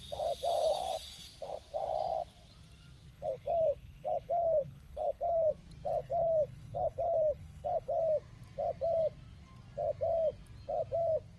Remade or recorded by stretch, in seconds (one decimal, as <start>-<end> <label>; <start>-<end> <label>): 0.0-0.6 recorded; 0.6-1.2 remade; 1.2-3.1 recorded; 3.1-5.5 remade; 5.5-6.0 recorded; 6.0-8.0 remade; 8.0-11.4 recorded